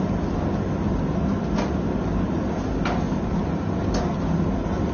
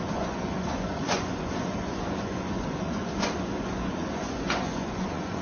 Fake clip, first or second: second